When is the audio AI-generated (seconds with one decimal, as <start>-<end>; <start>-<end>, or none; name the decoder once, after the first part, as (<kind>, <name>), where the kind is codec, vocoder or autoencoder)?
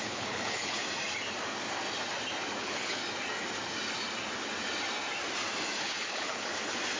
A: 0.0-0.8 (codec, HILCodec); 2.6-3.0; 5.8-6.5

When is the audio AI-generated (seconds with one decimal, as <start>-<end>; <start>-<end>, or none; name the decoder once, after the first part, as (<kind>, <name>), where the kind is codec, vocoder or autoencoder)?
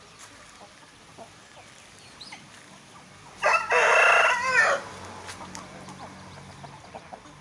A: none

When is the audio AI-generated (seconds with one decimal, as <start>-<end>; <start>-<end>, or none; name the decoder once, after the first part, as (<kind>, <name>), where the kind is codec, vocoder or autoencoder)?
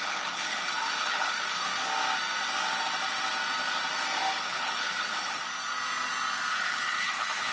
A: 0.0-1.7 (codec, HILCodec); 4.4-5.4; 6.5-7.5